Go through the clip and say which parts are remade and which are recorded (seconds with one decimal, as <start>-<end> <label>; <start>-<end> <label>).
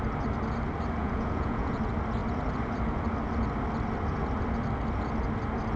0.0-1.0 recorded; 1.0-1.8 remade; 1.8-5.8 recorded